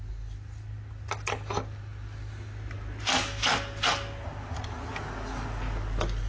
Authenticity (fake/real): real